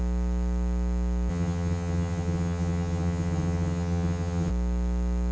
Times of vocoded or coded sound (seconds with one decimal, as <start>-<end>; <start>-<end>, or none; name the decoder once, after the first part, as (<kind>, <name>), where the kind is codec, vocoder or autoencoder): 1.3-4.5 (vocoder, HiFi-GAN)